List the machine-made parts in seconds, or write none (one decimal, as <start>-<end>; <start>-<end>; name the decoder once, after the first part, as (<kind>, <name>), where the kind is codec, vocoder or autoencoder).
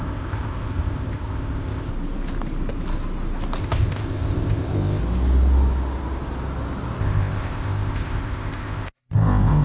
0.0-1.9 (codec, ZipCodec); 3.6-5.0; 7.0-9.6